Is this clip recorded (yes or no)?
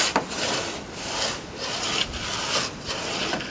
yes